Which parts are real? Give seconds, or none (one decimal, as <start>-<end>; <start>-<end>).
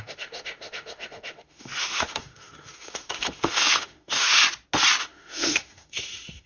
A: 4.4-5.0